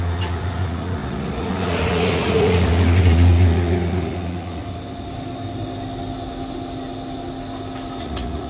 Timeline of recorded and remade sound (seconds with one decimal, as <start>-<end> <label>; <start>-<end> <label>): 0.0-4.6 remade; 4.6-8.0 recorded; 8.0-8.5 remade

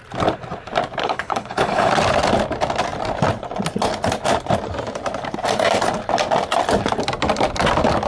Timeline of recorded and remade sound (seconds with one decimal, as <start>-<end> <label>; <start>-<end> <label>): 0.0-1.0 recorded; 1.0-1.9 remade; 1.9-8.1 recorded

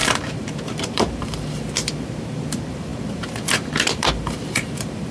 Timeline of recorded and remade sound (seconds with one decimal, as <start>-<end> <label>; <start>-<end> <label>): 0.0-5.1 remade

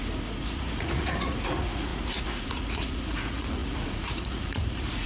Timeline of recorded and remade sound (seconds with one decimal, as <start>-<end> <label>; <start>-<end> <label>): 0.0-5.1 remade

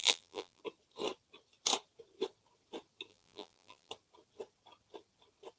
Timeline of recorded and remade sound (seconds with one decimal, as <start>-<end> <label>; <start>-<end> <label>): 0.0-0.6 remade; 0.6-3.1 recorded; 3.1-3.9 remade; 3.9-5.6 recorded